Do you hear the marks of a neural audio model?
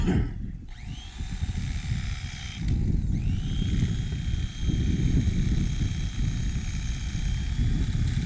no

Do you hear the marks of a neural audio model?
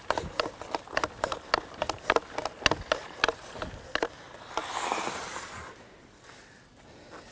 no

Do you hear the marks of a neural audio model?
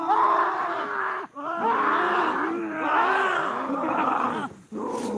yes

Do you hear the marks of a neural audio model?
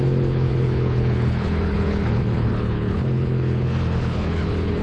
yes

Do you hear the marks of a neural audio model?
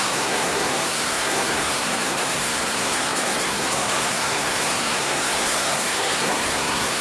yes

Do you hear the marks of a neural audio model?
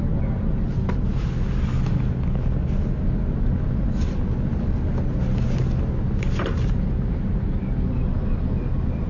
no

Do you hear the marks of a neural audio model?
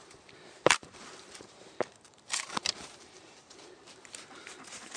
yes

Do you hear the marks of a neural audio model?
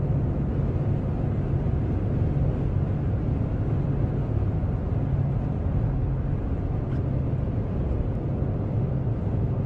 no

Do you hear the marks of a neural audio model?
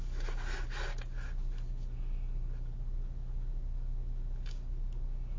no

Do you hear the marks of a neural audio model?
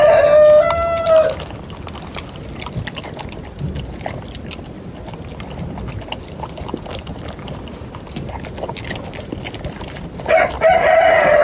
no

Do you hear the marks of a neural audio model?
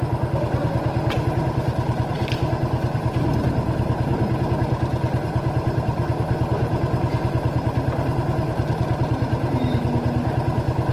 no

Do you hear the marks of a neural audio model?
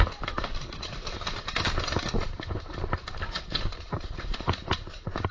yes